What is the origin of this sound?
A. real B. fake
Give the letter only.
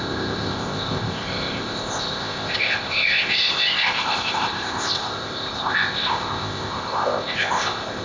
B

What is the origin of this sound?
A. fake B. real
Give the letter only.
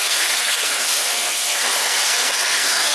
A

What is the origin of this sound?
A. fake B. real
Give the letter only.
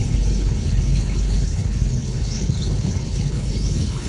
A